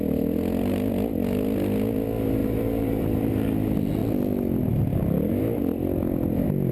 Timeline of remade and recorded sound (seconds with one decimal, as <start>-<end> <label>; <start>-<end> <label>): 0.0-2.4 recorded; 2.4-3.3 remade; 3.3-6.7 recorded